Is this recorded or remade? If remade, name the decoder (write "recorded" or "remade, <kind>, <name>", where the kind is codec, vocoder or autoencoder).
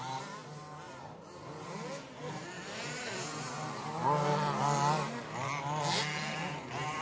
recorded